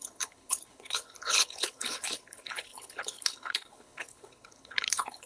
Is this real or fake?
fake